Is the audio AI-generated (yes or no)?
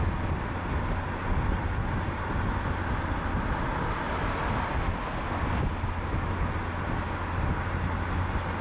no